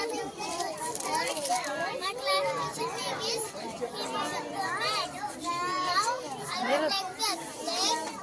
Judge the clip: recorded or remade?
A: remade